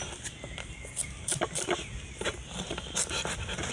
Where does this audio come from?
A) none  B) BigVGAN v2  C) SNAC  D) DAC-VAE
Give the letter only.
B